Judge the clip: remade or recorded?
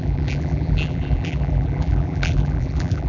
remade